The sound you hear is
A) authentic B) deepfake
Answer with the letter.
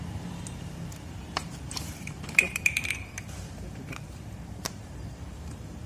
B